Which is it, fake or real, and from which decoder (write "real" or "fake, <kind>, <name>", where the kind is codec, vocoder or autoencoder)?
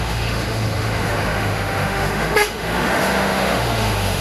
fake, autoencoder, DAC-VAE